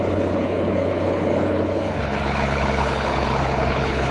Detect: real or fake fake